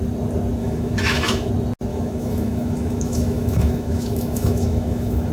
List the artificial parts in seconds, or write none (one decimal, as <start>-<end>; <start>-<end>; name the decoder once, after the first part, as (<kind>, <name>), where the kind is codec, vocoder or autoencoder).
0.6-1.5 (autoencoder, DAC-VAE); 1.9-5.3